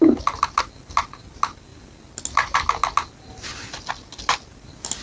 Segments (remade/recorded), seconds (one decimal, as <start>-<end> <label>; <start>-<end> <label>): 0.0-5.0 recorded